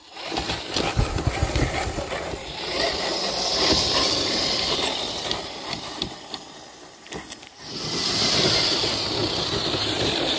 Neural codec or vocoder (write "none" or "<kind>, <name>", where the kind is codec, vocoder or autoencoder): vocoder, BigVGAN v2